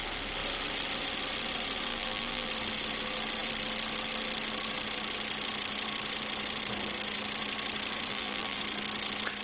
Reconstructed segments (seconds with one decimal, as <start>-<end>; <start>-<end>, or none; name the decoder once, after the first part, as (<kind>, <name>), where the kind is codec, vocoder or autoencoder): 1.9-2.5 (vocoder, BigVGAN v2); 8.1-8.6